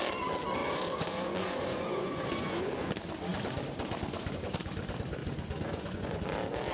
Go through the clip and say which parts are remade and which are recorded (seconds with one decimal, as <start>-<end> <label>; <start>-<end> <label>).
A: 0.0-0.6 recorded; 0.6-2.9 remade; 2.9-5.2 recorded; 5.2-6.2 remade; 6.2-6.7 recorded

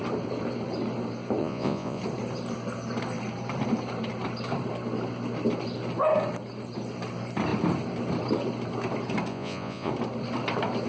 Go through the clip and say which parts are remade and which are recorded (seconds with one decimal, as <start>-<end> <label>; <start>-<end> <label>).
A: 0.0-1.4 recorded; 1.4-2.0 remade; 2.0-9.3 recorded; 9.3-9.9 remade; 9.9-10.9 recorded

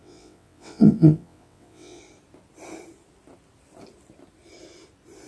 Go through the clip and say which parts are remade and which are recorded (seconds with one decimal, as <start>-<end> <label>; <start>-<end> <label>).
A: 0.0-2.0 remade; 2.0-5.3 recorded

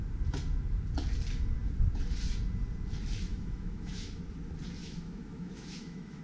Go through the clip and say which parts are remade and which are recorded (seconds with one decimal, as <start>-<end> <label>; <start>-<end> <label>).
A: 0.0-3.3 recorded; 3.3-4.2 remade; 4.2-4.8 recorded; 4.8-6.2 remade

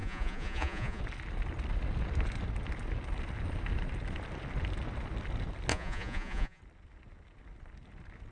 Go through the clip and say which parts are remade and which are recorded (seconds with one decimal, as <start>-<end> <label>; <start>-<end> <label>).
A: 0.0-1.0 remade; 1.0-5.7 recorded; 5.7-6.6 remade; 6.6-8.3 recorded